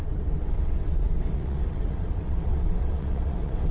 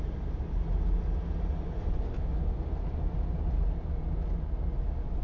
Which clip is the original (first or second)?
second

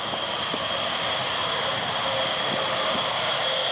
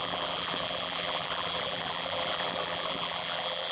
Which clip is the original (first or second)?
first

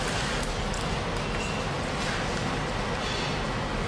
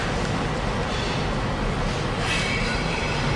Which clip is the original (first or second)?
first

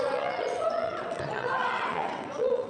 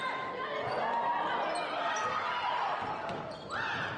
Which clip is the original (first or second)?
second